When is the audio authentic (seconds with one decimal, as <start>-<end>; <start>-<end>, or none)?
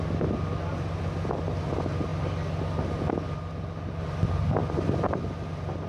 0.0-5.9